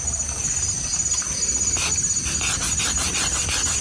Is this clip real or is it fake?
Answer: real